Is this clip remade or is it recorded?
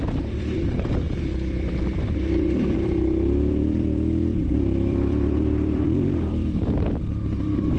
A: remade